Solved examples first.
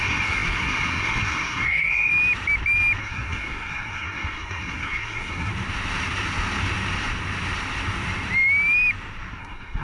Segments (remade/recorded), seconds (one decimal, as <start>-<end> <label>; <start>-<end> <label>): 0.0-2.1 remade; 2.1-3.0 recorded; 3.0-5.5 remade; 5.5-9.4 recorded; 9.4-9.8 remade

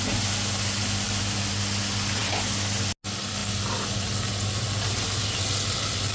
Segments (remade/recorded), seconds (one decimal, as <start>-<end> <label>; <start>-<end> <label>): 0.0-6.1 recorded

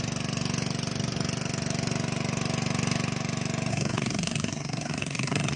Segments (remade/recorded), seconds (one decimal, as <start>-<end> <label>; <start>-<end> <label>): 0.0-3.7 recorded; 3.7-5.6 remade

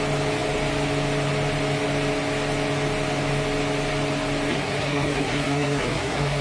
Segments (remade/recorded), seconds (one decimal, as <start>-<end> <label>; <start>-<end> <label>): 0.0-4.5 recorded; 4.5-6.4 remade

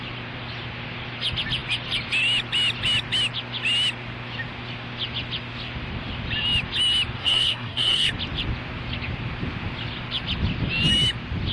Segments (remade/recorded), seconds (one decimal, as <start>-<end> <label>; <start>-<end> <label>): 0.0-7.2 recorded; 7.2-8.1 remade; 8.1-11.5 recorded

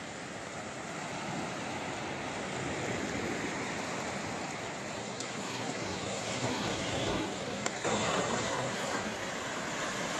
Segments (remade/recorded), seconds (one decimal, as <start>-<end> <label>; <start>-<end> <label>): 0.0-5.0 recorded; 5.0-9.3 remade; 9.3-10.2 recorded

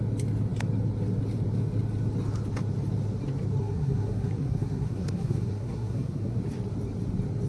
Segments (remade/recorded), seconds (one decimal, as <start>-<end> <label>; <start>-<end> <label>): 0.0-3.6 recorded; 3.6-6.4 remade; 6.4-7.5 recorded